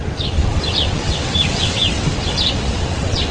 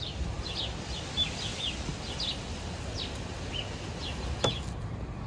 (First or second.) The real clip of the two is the second